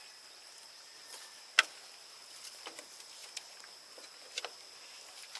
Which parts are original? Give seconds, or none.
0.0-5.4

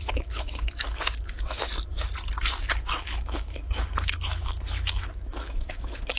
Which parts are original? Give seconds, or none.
1.7-3.0